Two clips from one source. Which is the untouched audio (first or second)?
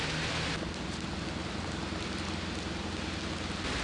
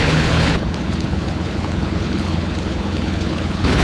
first